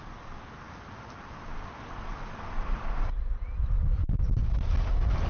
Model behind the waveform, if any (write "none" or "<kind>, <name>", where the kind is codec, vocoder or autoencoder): none